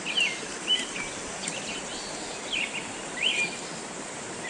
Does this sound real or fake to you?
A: real